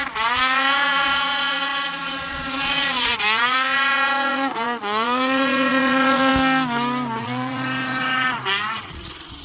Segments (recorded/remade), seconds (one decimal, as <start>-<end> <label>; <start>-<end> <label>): 0.0-6.3 remade; 6.3-7.2 recorded; 7.2-9.4 remade